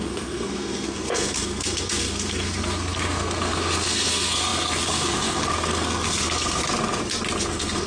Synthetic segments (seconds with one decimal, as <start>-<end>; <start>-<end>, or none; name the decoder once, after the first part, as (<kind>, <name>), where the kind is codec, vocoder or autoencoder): 0.0-6.6 (codec, SNAC); 7.5-7.9